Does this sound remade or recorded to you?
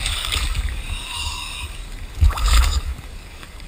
remade